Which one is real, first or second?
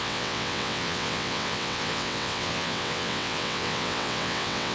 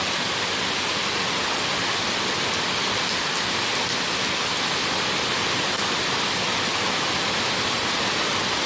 second